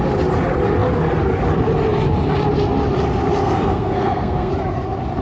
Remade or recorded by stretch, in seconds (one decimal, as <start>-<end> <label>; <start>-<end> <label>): 0.0-3.4 recorded; 3.4-4.5 remade; 4.5-5.2 recorded